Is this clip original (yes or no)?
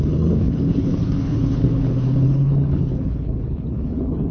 no